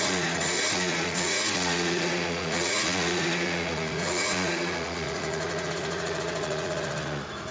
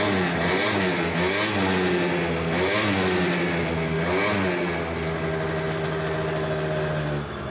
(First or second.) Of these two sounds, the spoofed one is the first